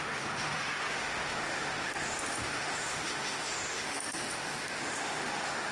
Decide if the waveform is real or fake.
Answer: fake